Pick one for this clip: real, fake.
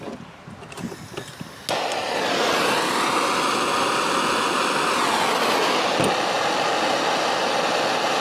real